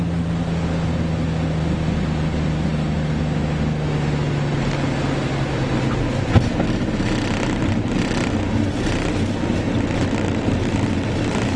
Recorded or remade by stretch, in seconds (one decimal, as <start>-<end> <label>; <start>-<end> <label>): 0.0-11.6 recorded